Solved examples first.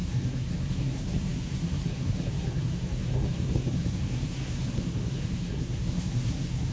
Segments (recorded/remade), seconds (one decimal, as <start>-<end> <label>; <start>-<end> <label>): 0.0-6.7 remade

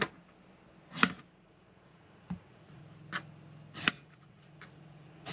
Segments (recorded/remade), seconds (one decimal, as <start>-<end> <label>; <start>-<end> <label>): 0.0-1.3 recorded; 1.3-2.8 remade; 2.8-3.9 recorded; 3.9-5.3 remade

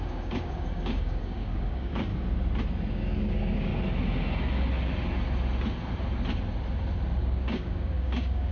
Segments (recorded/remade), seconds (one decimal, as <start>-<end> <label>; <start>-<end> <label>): 0.0-2.1 remade; 2.1-2.9 recorded; 2.9-3.7 remade; 3.7-7.2 recorded; 7.2-8.5 remade